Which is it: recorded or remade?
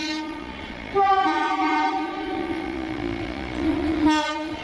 remade